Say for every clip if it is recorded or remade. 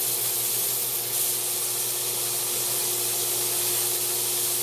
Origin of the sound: recorded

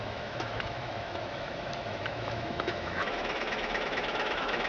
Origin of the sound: remade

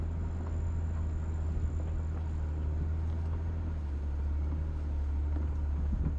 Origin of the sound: recorded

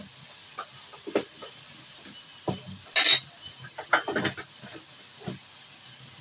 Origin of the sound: recorded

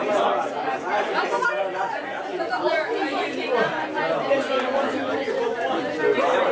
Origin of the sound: recorded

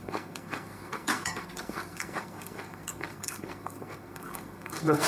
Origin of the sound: remade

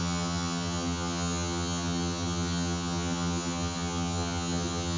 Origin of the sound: remade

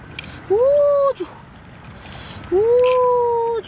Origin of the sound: recorded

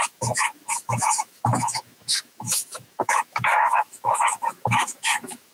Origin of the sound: remade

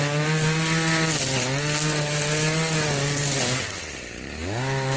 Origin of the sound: recorded